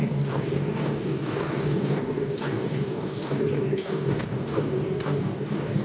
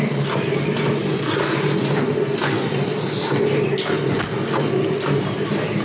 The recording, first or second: second